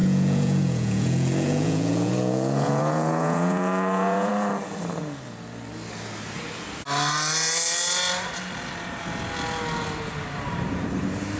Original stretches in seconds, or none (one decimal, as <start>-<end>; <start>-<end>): 4.3-11.4